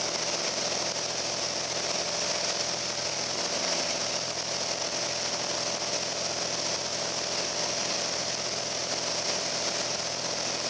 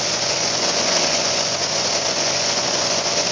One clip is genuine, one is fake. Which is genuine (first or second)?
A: first